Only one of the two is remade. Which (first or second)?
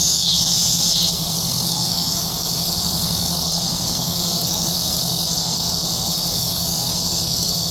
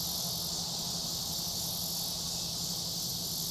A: first